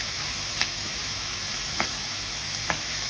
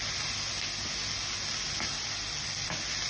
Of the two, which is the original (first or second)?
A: second